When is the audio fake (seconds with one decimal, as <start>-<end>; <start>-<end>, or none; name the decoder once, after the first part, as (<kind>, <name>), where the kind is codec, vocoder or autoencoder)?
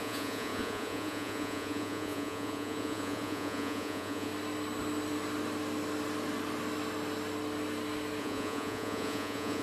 0.0-4.3 (vocoder, Vocos); 8.2-9.6